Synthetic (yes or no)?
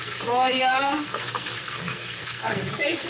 yes